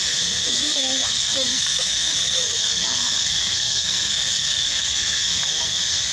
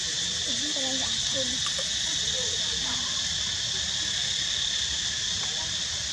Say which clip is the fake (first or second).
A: first